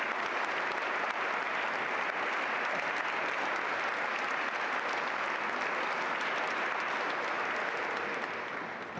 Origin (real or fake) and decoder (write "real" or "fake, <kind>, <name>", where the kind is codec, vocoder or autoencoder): real